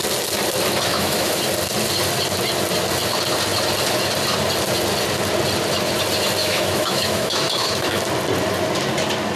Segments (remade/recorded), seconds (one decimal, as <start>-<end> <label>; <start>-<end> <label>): 0.0-0.9 recorded; 0.9-1.4 remade; 1.4-6.4 recorded; 6.4-8.0 remade; 8.0-9.4 recorded